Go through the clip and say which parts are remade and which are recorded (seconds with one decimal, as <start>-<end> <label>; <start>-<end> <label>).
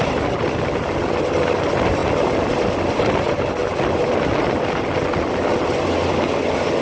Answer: 0.0-6.8 recorded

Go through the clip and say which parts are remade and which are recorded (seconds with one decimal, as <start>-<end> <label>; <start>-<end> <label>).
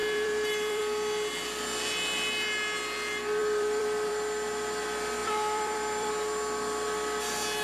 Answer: 0.0-0.8 remade; 0.8-3.4 recorded; 3.4-4.1 remade; 4.1-5.2 recorded; 5.2-6.1 remade; 6.1-7.6 recorded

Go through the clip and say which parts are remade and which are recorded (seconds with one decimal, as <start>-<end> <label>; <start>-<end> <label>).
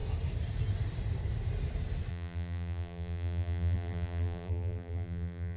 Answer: 0.0-2.1 recorded; 2.1-5.6 remade